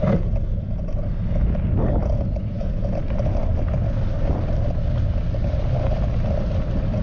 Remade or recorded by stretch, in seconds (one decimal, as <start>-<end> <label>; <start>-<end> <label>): 0.0-7.0 recorded